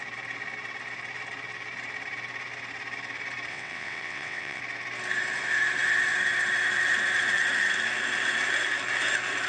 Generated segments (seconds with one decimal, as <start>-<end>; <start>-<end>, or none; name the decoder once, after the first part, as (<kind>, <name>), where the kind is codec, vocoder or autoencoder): 3.5-4.6 (vocoder, WaveNeXt)